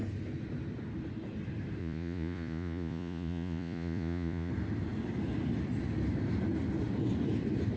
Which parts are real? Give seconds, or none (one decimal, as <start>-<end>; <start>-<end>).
0.0-1.8; 4.5-7.8